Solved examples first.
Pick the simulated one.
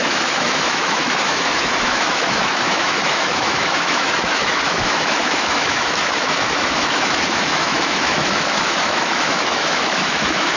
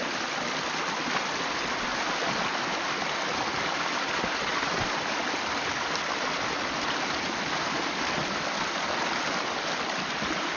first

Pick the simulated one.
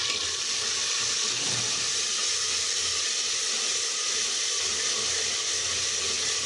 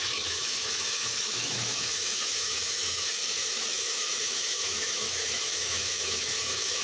second